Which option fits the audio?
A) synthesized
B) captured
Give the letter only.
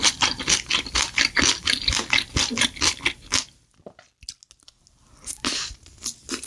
B